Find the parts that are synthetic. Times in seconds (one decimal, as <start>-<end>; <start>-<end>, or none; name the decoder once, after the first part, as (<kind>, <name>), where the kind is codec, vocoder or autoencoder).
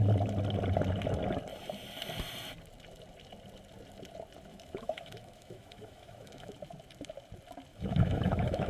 4.5-6.5 (autoencoder, DAC-VAE); 7.7-8.7